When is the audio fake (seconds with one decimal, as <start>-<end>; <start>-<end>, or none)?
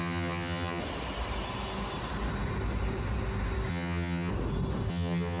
0.0-0.8; 3.7-4.3; 4.9-5.4